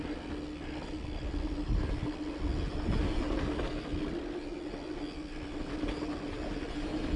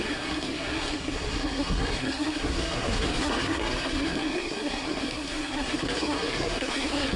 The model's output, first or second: second